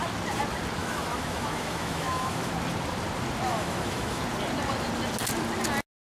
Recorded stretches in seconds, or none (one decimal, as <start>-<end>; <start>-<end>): 0.0-0.8; 2.5-3.5; 4.2-6.0

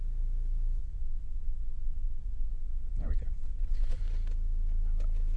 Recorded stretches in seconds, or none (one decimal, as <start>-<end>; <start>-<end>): 0.0-0.8; 4.0-5.4

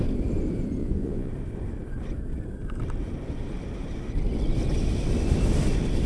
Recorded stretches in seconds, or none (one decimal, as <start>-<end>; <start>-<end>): 0.0-0.8; 1.3-6.1

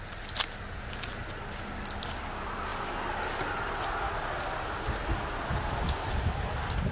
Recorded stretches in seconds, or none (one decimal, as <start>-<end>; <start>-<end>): 0.0-6.9

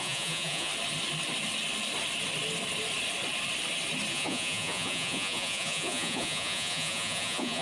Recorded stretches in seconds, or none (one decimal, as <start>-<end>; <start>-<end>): 0.7-4.1

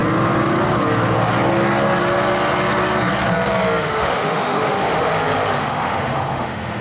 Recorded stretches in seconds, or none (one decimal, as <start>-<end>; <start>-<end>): 0.0-3.8; 5.1-5.6